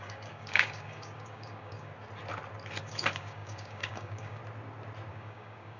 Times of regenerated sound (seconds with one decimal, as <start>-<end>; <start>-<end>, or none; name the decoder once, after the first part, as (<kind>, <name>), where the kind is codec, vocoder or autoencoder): 0.0-1.9 (codec, DAC); 2.8-4.4; 5.1-5.8